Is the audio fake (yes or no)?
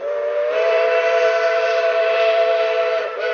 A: yes